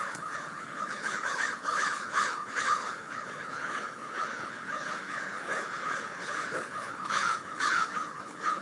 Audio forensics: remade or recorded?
remade